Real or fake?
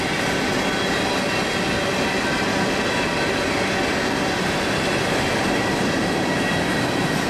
real